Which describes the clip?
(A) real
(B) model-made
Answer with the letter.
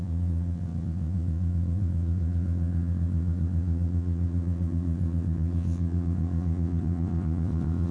B